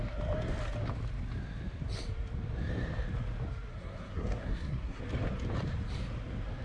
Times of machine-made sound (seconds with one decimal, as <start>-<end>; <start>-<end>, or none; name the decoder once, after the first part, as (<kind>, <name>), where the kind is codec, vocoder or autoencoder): 3.7-5.0 (codec, SNAC)